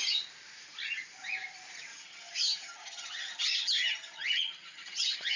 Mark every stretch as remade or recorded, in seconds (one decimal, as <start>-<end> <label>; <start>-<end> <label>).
0.0-1.9 recorded; 1.9-5.4 remade